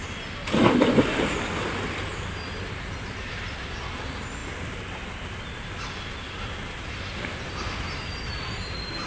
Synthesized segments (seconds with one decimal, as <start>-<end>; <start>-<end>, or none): none